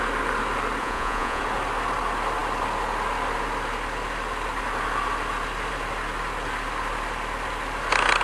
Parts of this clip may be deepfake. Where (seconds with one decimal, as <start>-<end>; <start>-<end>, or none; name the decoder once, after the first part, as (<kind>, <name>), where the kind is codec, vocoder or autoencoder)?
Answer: 0.8-1.4 (vocoder, Vocos)